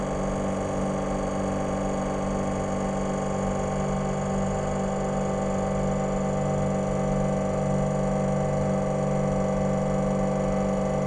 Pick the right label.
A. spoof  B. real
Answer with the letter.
B